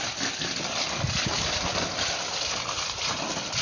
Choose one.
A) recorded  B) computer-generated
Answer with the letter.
A